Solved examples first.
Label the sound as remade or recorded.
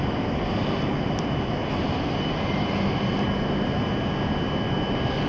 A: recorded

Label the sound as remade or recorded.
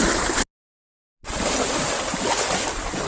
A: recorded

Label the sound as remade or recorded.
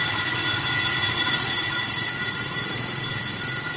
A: remade